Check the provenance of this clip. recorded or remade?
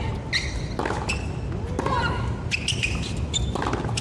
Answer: recorded